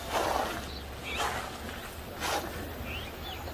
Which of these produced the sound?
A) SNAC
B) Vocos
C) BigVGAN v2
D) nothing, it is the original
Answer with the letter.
D